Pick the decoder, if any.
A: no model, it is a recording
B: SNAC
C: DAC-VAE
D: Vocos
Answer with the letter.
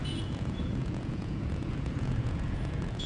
D